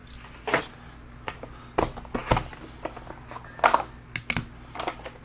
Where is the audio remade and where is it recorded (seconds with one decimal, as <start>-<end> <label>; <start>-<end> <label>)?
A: 0.0-5.2 recorded